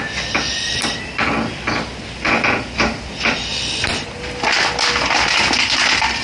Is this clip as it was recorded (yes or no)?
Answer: yes